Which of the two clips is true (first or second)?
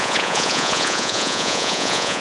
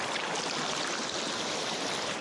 second